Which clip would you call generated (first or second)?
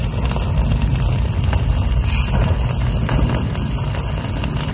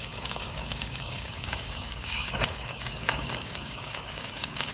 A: second